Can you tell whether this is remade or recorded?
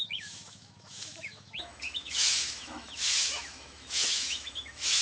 remade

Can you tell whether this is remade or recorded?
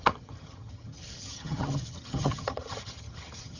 remade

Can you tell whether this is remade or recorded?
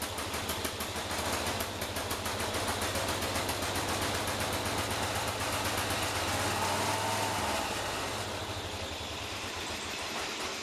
recorded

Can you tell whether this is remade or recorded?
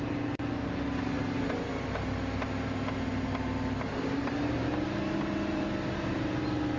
recorded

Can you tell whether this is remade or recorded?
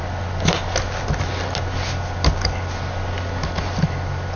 recorded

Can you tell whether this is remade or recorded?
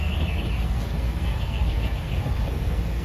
remade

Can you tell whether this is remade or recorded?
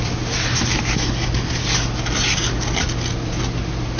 recorded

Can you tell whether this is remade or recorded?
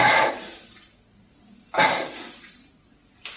recorded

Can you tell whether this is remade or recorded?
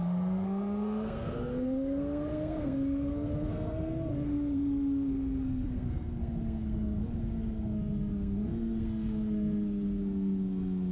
remade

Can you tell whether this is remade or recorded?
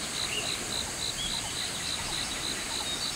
recorded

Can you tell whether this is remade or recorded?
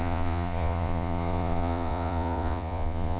remade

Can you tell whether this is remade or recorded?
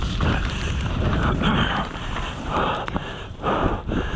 remade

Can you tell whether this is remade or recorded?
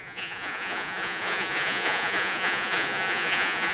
remade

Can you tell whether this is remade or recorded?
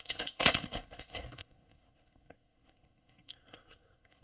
remade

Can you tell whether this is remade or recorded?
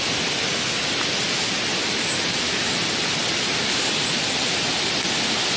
recorded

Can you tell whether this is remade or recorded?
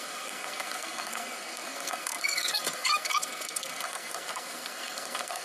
remade